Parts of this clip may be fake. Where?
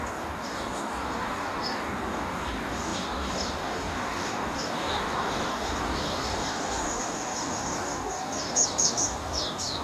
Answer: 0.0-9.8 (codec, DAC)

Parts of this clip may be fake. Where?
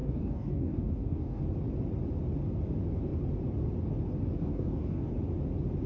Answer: 0.0-1.4 (codec, DAC); 4.4-5.1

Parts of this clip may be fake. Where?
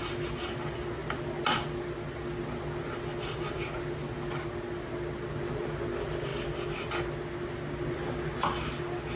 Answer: none